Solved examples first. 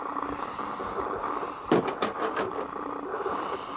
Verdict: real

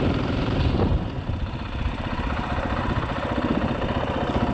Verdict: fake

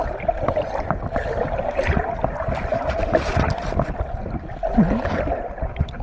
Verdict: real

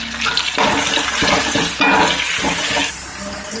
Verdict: real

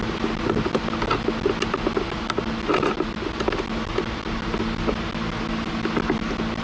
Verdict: real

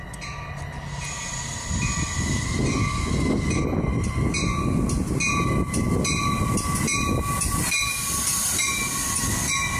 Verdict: real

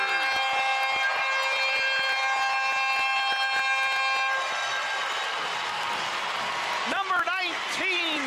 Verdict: real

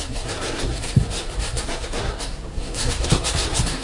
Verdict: fake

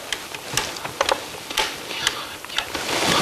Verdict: real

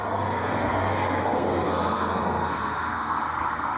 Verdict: fake